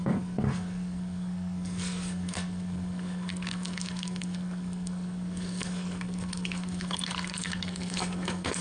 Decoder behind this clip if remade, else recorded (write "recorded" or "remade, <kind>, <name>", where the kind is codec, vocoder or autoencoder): remade, codec, SNAC